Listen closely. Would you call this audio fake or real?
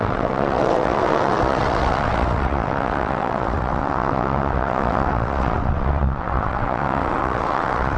fake